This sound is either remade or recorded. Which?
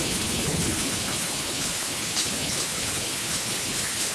remade